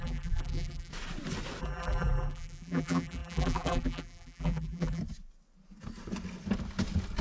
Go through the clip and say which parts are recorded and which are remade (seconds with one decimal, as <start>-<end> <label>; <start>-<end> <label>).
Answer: 0.0-0.9 remade; 0.9-1.6 recorded; 1.6-5.0 remade; 5.0-7.2 recorded